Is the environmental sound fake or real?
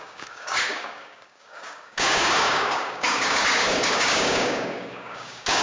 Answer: fake